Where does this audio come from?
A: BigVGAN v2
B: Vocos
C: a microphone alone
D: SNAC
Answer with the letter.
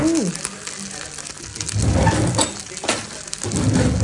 C